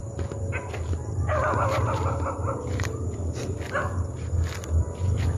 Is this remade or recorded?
recorded